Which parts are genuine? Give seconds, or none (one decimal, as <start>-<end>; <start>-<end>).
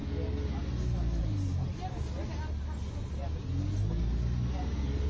0.0-5.1